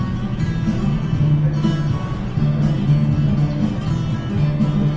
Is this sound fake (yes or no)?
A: no